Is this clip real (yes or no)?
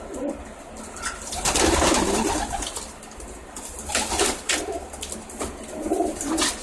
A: yes